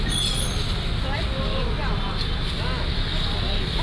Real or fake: real